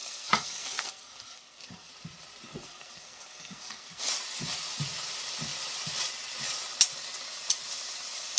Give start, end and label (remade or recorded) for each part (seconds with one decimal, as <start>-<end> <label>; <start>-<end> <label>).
0.0-1.9 remade; 1.9-2.5 recorded; 2.5-4.1 remade; 4.1-8.4 recorded